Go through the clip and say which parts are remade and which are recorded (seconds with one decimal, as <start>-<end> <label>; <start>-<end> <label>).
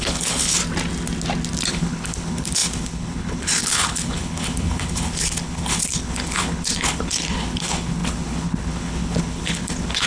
0.0-0.6 remade; 0.6-1.7 recorded; 1.7-10.1 remade